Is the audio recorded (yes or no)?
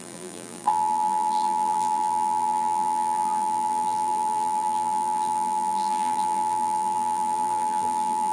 no